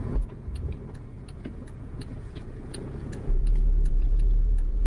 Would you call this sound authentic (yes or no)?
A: no